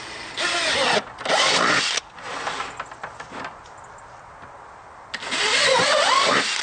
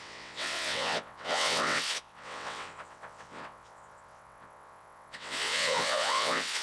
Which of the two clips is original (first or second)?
first